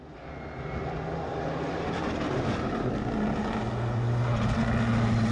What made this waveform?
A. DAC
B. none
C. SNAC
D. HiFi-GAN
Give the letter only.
B